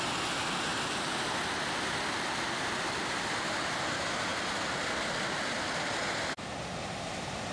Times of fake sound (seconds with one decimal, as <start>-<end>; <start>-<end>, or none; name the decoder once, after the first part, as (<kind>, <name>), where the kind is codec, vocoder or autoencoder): none